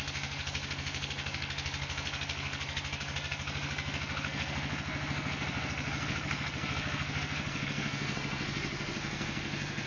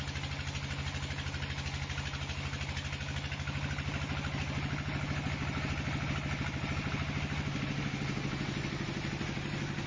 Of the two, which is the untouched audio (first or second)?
second